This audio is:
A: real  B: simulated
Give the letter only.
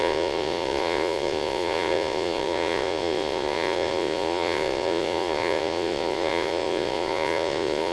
B